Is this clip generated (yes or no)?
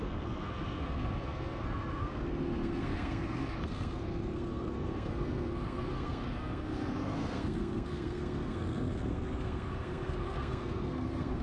yes